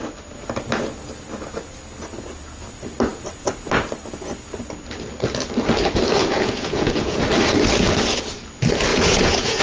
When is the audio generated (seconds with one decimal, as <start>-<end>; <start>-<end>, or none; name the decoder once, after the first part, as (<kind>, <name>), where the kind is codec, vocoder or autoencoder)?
6.2-7.2 (vocoder, Vocos); 8.9-9.6